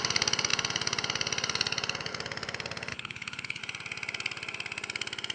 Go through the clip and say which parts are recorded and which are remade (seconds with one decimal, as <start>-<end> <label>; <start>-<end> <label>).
0.0-2.9 recorded; 2.9-3.6 remade; 3.6-5.3 recorded